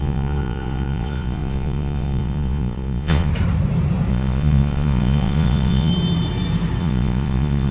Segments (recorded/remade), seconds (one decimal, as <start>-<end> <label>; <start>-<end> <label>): 0.0-3.3 remade; 3.3-4.1 recorded; 4.1-5.9 remade; 5.9-6.8 recorded; 6.8-7.7 remade